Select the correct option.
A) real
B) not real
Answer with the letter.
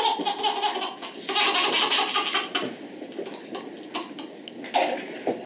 A